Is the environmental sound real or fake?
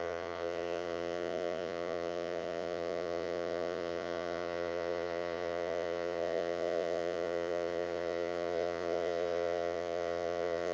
fake